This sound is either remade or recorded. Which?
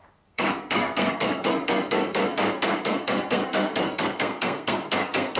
remade